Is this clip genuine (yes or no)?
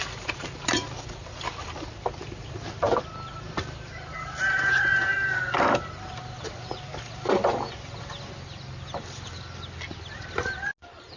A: yes